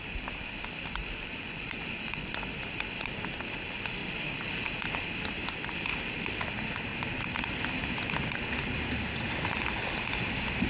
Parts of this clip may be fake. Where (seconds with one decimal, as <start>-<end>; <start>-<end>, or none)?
1.0-2.3